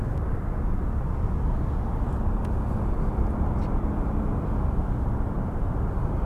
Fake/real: real